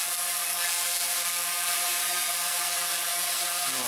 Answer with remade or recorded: remade